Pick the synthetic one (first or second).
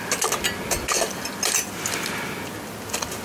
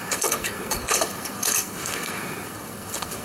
second